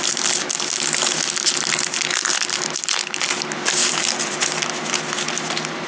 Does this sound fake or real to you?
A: real